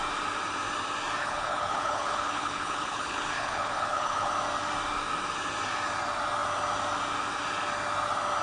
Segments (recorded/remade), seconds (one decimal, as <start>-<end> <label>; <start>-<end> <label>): 0.0-1.2 recorded; 1.2-4.3 remade; 4.3-8.4 recorded